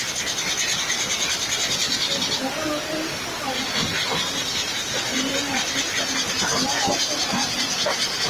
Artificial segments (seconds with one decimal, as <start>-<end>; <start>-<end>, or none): none